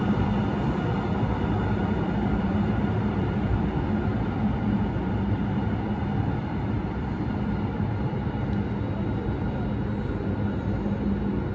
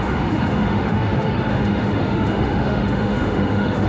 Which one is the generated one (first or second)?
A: second